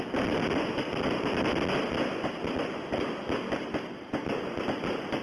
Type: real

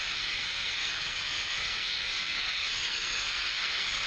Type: fake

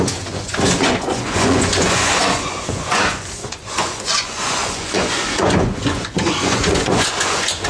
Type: fake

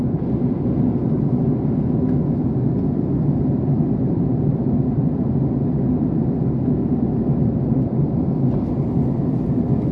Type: real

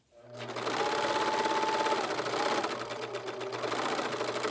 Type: real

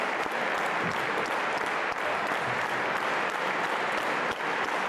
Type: real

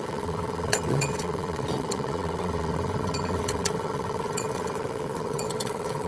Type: fake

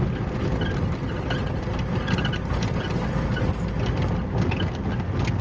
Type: real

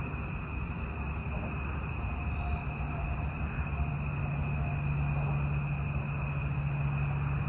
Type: real